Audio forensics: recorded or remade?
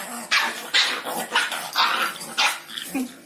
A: recorded